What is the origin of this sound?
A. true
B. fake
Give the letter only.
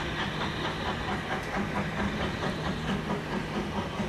A